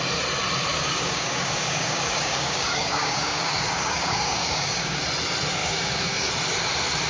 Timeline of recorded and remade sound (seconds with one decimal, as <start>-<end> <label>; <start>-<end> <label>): 0.0-0.7 recorded; 0.7-5.0 remade; 5.0-5.6 recorded; 5.6-6.3 remade; 6.3-7.1 recorded